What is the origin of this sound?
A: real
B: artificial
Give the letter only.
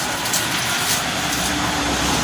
B